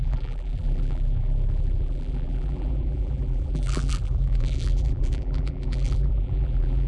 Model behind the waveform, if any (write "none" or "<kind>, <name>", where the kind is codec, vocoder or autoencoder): vocoder, BigVGAN v2